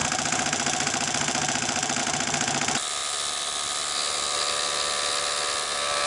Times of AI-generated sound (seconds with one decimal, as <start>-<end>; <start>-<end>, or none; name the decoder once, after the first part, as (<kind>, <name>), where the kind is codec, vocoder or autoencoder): none